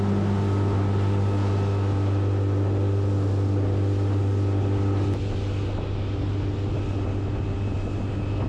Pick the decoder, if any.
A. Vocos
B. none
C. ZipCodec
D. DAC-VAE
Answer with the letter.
B